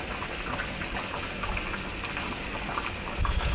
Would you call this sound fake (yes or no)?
no